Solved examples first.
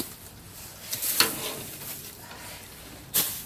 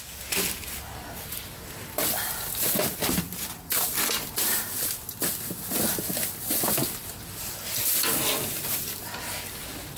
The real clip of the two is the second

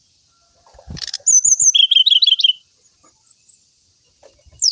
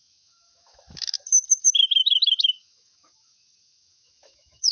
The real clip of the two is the first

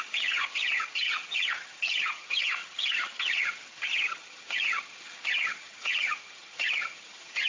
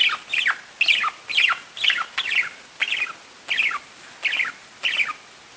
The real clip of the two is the second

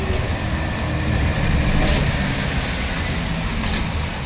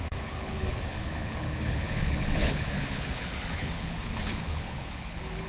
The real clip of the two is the first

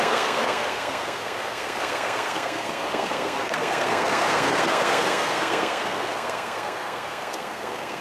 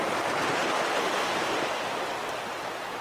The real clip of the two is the second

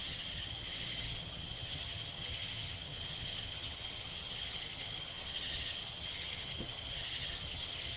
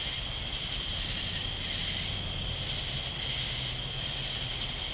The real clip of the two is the second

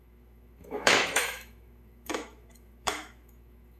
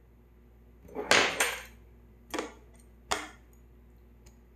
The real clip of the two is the second